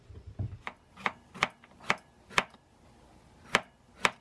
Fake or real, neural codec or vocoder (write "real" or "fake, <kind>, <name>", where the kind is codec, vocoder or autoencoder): real